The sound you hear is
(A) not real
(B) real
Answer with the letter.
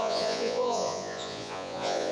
A